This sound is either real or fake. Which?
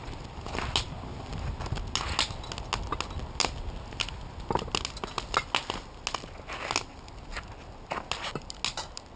real